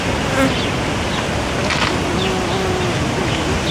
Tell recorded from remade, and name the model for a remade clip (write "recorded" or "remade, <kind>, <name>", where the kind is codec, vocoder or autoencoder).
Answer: recorded